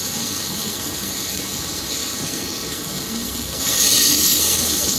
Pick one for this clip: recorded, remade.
remade